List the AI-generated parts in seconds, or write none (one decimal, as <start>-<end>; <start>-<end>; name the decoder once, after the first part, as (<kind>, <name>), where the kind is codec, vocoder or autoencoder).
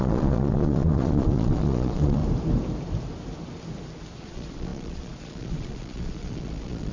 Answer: 0.0-2.2 (vocoder, Vocos); 4.2-6.9